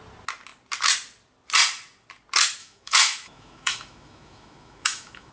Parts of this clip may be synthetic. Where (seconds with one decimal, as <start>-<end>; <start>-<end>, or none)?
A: 2.6-5.3